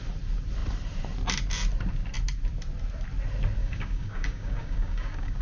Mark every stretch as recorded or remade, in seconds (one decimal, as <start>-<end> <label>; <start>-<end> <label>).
0.0-3.6 recorded; 3.6-5.4 remade